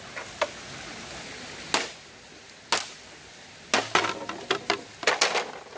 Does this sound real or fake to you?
real